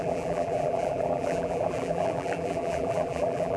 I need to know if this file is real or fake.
fake